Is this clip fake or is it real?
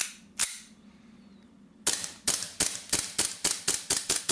real